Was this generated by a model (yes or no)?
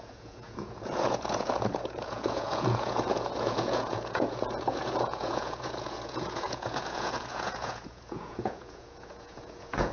yes